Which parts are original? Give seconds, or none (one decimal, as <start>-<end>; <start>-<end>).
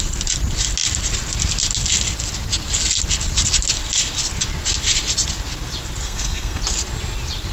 0.0-6.0; 6.6-7.5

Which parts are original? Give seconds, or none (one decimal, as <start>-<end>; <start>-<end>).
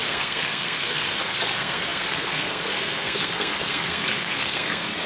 none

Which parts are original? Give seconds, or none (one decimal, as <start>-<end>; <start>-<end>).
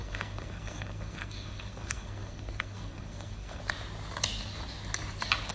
3.6-5.5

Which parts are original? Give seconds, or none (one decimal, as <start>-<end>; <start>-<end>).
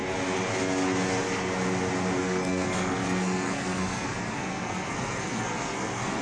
0.0-2.2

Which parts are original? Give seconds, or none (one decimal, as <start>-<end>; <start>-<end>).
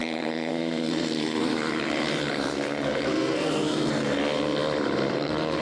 1.4-2.3; 4.2-5.1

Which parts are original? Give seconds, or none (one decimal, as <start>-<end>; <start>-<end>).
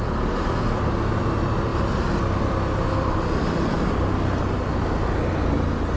0.0-6.0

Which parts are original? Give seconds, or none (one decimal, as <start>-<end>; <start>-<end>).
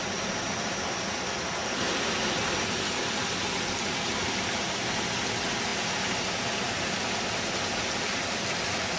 0.0-9.0